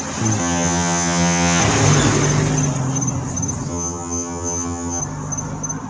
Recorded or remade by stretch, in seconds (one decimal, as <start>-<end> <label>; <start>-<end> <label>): 0.0-0.4 recorded; 0.4-1.6 remade; 1.6-3.7 recorded; 3.7-5.0 remade; 5.0-5.9 recorded